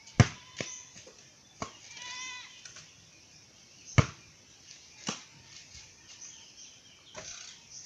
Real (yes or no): yes